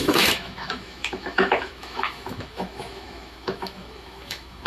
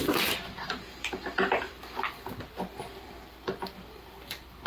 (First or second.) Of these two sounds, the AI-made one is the first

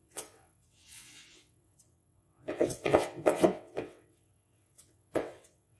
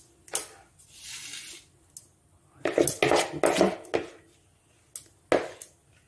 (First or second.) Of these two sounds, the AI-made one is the first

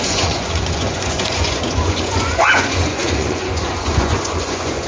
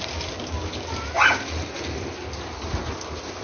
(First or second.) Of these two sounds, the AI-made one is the first